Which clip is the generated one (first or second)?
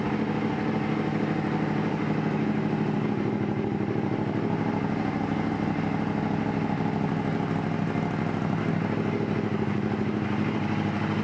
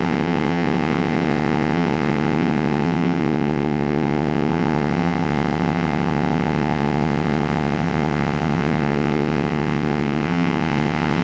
second